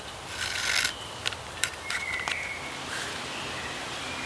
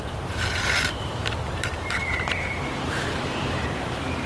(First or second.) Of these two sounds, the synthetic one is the second